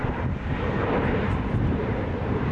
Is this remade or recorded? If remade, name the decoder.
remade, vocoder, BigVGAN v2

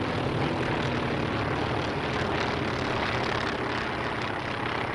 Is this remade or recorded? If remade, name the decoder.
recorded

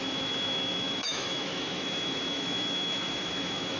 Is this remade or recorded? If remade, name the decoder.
remade, autoencoder, DAC-VAE